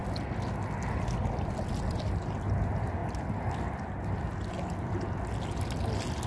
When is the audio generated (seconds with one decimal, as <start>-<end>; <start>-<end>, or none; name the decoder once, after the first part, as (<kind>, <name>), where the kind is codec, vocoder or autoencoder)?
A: none

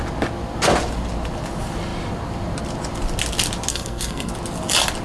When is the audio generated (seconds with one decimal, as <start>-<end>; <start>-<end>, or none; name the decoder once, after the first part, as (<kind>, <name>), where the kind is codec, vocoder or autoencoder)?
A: 3.7-4.3 (codec, SNAC)

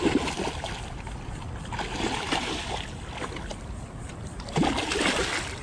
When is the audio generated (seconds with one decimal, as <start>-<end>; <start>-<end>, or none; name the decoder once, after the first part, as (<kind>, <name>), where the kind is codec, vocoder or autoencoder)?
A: none

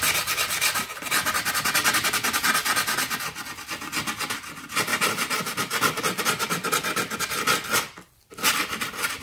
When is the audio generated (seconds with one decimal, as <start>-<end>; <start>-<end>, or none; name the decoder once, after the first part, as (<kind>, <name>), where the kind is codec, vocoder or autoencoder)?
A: 4.9-6.2 (vocoder, BigVGAN v2)

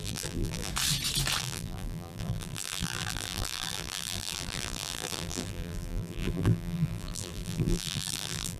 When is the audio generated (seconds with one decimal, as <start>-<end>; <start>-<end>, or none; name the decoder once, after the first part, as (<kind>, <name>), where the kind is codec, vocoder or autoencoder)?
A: 0.0-0.7 (vocoder, BigVGAN v2); 1.4-8.6

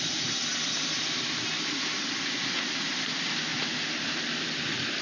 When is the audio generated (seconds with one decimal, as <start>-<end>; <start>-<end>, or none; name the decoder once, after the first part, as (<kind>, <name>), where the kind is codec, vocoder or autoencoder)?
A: none

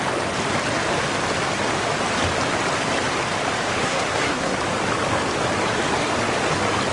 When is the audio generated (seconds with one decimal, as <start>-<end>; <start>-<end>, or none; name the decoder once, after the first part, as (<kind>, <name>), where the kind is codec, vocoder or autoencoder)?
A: 3.8-4.6 (codec, SNAC)